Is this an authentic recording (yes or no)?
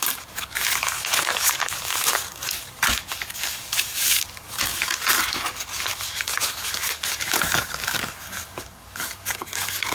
no